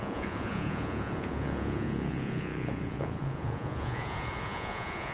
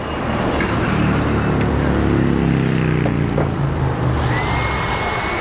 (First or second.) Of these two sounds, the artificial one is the first